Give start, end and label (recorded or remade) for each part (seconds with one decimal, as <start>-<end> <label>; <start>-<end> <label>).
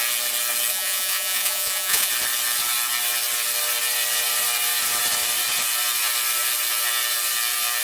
0.0-0.7 recorded; 0.7-2.1 remade; 2.1-7.8 recorded